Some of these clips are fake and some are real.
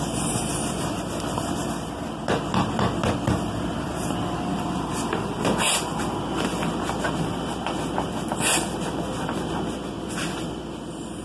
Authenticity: real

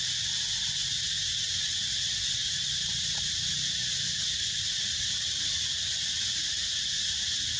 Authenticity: real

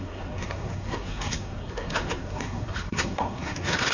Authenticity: fake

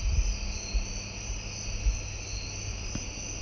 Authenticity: real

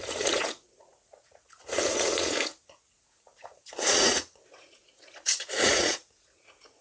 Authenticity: fake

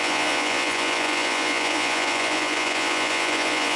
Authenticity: fake